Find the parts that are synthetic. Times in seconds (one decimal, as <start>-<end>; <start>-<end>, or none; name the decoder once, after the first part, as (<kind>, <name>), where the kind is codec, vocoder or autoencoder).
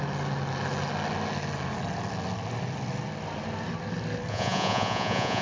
4.3-5.4 (vocoder, Vocos)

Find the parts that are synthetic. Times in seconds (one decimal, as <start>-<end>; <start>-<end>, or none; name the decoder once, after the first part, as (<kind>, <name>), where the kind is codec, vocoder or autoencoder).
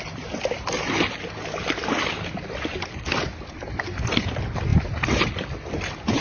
none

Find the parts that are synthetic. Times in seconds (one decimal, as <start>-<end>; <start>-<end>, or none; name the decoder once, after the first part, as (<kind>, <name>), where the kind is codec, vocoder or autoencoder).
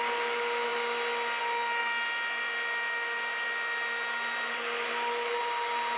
none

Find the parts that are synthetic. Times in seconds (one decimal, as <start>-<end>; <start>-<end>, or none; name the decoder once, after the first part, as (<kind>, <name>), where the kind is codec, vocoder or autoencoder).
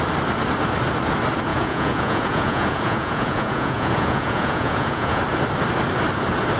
1.5-5.2 (vocoder, Vocos)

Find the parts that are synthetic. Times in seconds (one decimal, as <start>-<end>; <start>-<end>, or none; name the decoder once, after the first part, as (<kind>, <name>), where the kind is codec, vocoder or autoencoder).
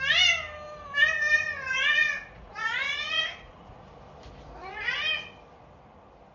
1.7-3.9 (vocoder, Vocos)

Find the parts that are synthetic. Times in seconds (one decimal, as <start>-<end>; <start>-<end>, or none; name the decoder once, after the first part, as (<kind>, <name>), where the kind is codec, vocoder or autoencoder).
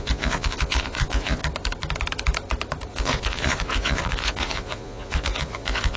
0.0-1.4 (vocoder, Vocos); 2.9-6.0